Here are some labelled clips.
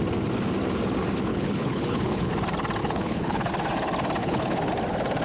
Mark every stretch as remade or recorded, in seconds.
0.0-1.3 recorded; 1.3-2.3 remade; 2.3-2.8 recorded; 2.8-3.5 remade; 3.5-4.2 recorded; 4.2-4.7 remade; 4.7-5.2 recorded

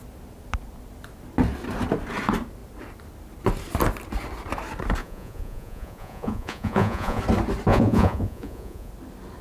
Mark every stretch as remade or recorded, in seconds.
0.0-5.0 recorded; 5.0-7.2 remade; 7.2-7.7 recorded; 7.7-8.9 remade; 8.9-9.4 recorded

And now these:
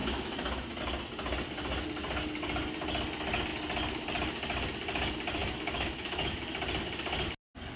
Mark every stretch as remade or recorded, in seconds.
0.0-0.8 remade; 0.8-5.4 recorded; 5.4-6.4 remade; 6.4-7.8 recorded